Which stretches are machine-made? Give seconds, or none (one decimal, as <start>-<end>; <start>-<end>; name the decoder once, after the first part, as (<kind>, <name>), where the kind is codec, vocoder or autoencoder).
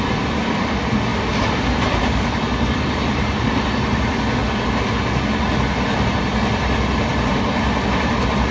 none